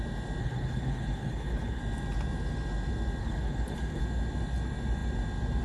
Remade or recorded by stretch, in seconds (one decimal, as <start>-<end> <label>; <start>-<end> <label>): 0.0-0.4 recorded; 0.4-1.8 remade; 1.8-3.2 recorded; 3.2-4.0 remade; 4.0-5.6 recorded